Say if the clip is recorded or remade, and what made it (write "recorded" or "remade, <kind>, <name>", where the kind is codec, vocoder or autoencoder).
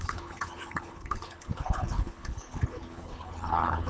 remade, codec, HILCodec